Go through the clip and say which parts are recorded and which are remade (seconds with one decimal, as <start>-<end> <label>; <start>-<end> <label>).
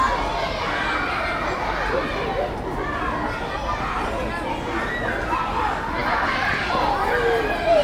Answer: 0.0-7.8 recorded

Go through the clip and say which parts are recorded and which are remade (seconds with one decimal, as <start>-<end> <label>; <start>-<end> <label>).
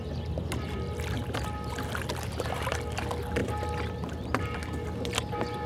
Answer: 0.0-3.4 remade; 3.4-5.3 recorded; 5.3-5.7 remade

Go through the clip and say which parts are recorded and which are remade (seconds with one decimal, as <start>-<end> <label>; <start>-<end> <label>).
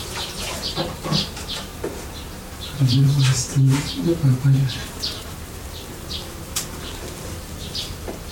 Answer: 0.0-1.7 remade; 1.7-2.6 recorded; 2.6-4.8 remade; 4.8-5.9 recorded; 5.9-8.3 remade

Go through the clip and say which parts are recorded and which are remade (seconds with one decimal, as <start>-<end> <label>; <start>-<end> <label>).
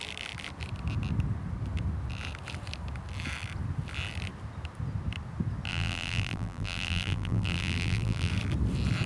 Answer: 0.0-5.7 recorded; 5.7-8.3 remade; 8.3-9.1 recorded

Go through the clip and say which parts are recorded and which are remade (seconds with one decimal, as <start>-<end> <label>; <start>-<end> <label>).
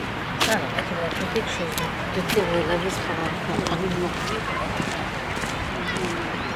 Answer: 0.0-3.2 recorded; 3.2-5.3 remade; 5.3-6.6 recorded